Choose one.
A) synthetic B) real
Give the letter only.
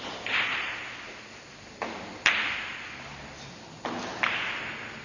B